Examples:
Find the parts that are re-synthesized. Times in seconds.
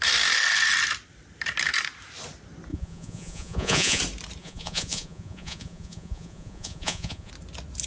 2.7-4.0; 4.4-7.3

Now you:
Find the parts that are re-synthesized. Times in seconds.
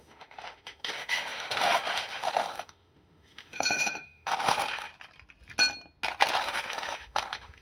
0.0-4.9; 6.4-7.6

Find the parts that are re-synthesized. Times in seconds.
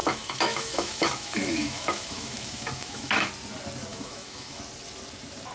0.0-3.3; 3.9-4.6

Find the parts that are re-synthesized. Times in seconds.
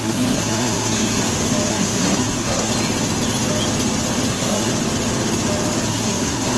0.0-1.2; 1.7-2.7; 4.3-4.7; 5.9-6.6